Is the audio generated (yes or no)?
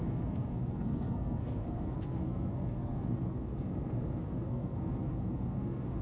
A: yes